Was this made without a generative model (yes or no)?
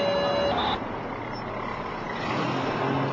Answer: yes